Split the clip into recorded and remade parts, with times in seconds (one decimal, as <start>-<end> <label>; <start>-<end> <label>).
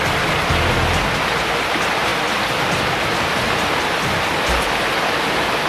0.0-5.7 recorded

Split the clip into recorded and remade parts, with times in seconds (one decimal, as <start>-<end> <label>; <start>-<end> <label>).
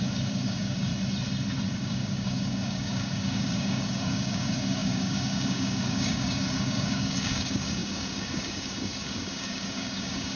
0.0-0.9 remade; 0.9-1.8 recorded; 1.8-10.4 remade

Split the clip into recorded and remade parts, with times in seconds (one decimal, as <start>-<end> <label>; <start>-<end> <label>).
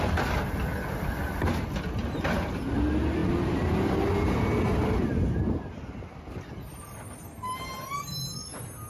0.0-8.9 recorded